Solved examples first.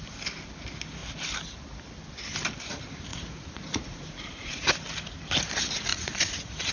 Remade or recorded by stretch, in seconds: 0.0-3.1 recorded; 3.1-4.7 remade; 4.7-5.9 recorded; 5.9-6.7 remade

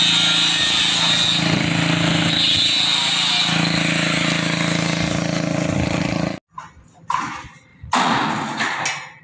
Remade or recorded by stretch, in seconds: 0.0-7.7 recorded; 7.7-8.3 remade; 8.3-9.2 recorded

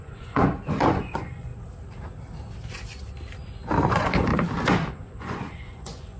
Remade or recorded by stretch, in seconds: 0.0-1.5 remade; 1.5-3.9 recorded; 3.9-4.3 remade; 4.3-4.9 recorded; 4.9-6.2 remade

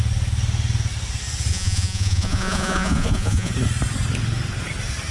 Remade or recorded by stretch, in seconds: 0.0-1.5 recorded; 1.5-3.5 remade; 3.5-5.1 recorded

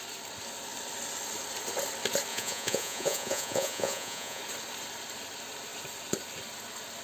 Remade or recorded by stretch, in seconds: 0.0-2.3 recorded; 2.3-4.4 remade; 4.4-7.0 recorded